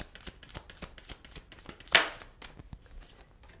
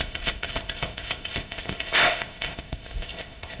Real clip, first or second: first